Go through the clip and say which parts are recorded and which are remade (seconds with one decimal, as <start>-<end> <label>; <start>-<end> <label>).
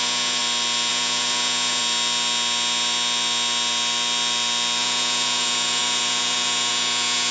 0.0-0.4 remade; 0.4-0.9 recorded; 0.9-1.8 remade; 1.8-4.8 recorded; 4.8-7.3 remade